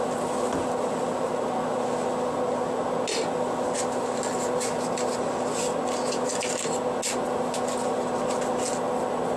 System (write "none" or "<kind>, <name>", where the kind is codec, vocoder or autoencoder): none